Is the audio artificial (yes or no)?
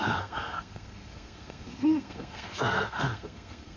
yes